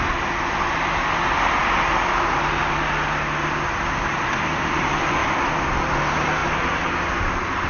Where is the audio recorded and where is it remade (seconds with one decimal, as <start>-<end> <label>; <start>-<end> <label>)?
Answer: 0.0-7.7 recorded